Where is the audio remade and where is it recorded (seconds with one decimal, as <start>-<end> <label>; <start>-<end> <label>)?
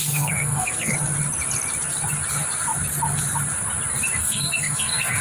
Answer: 0.0-0.9 remade; 0.9-4.2 recorded; 4.2-5.2 remade